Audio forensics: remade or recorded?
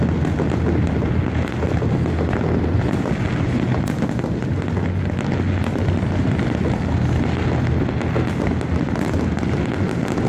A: recorded